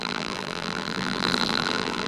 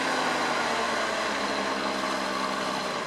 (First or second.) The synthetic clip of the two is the first